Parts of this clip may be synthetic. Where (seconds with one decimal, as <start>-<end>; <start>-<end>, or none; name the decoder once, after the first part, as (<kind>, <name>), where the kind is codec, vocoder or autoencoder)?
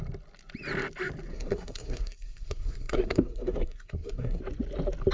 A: 1.3-4.4 (codec, SNAC)